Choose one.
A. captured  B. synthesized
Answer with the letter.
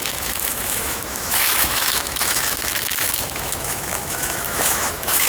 B